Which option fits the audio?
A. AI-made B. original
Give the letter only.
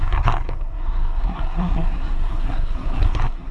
A